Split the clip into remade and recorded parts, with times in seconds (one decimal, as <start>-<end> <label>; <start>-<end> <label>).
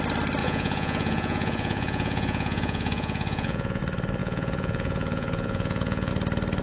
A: 0.0-0.4 recorded; 0.4-3.8 remade; 3.8-4.2 recorded; 4.2-6.1 remade; 6.1-6.6 recorded